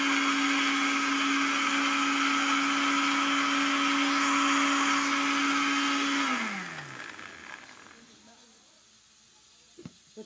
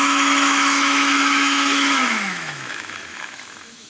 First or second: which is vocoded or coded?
second